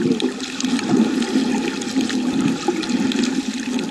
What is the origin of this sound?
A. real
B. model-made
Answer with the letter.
B